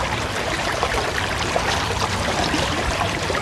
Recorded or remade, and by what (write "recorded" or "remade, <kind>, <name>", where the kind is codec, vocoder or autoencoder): remade, vocoder, BigVGAN v2